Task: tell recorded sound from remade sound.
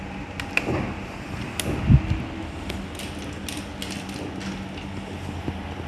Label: recorded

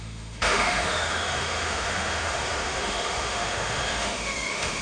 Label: remade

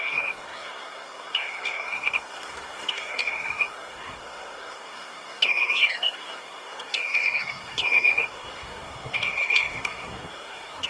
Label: remade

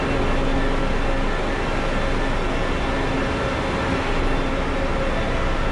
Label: recorded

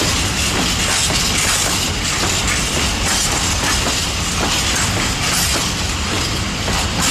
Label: recorded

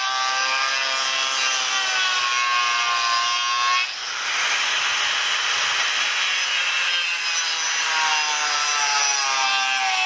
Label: recorded